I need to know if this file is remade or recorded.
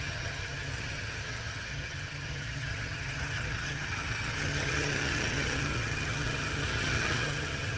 remade